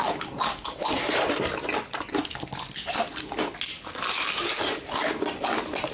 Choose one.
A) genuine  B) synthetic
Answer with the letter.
A